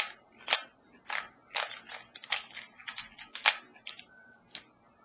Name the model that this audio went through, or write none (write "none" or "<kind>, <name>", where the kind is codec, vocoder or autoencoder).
none